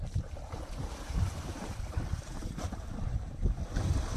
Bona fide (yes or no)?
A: no